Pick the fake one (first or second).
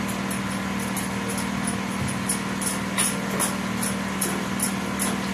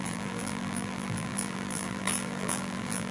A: second